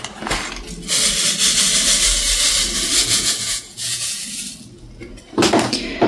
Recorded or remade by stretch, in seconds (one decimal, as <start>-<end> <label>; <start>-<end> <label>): 0.0-3.0 recorded; 3.0-4.2 remade; 4.2-6.1 recorded